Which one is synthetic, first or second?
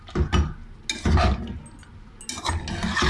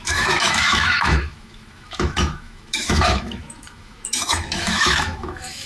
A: second